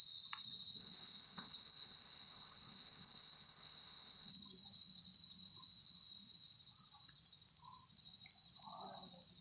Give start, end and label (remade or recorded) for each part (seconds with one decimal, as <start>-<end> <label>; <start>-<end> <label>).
0.0-0.8 recorded; 0.8-4.3 remade; 4.3-9.4 recorded